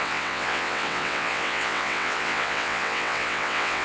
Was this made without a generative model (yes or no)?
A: no